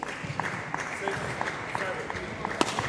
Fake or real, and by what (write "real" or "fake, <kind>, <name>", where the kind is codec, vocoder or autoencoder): real